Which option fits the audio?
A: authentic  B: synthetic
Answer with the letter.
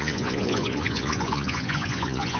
B